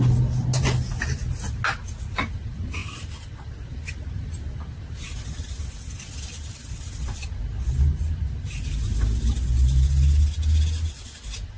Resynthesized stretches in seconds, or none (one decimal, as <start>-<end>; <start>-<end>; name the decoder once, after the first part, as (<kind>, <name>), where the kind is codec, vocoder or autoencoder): none